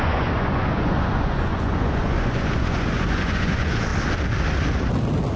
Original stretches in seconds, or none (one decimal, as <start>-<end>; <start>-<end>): 3.9-5.4